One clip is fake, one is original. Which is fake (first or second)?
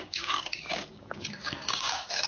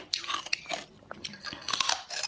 first